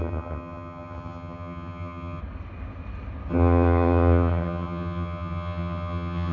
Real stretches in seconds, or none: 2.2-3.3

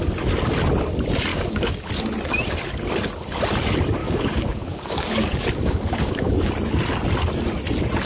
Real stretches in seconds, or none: 0.0-1.3; 1.9-4.0; 6.5-8.1

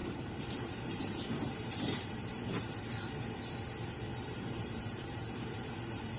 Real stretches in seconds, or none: 2.7-4.1; 5.8-6.2